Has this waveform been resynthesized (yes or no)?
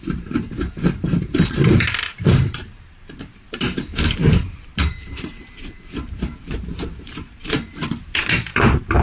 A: yes